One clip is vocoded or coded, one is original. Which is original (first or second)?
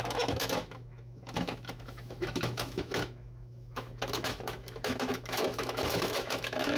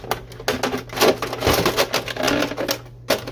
second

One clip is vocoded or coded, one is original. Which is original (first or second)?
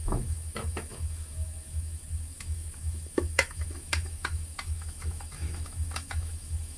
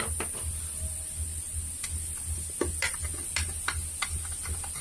second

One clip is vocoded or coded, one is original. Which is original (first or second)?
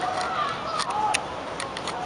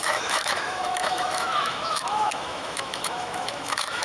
first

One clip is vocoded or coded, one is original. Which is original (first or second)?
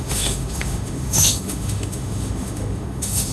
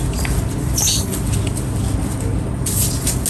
second